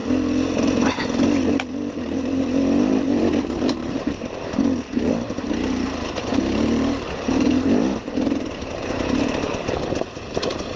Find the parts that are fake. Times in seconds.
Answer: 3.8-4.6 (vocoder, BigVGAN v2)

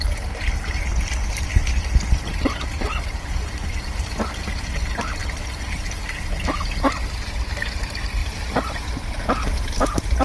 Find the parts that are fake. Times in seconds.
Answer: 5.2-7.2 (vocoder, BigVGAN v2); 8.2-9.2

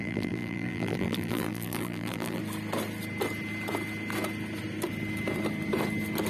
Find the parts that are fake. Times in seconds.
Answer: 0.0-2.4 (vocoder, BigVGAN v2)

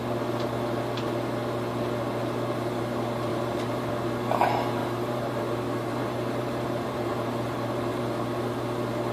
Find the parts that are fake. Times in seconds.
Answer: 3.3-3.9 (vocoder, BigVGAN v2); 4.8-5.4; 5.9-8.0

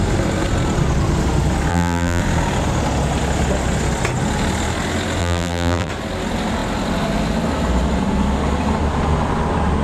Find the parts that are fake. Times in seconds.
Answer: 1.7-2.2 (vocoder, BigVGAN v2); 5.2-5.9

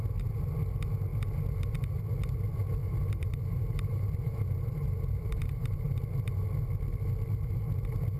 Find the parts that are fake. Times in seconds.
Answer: 2.8-6.0 (vocoder, BigVGAN v2)

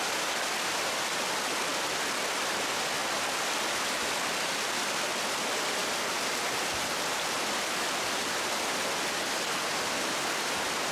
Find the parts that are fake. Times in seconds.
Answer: none